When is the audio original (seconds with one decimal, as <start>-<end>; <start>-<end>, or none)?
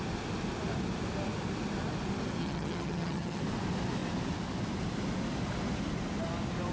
0.0-2.4; 3.4-6.7